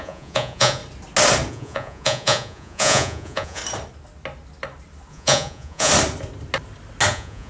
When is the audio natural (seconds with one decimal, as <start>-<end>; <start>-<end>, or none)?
0.8-1.5; 3.6-5.1; 5.9-7.1